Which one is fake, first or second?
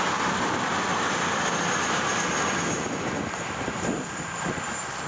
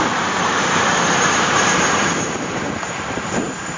second